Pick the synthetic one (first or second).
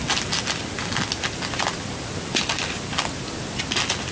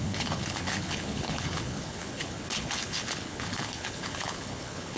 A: second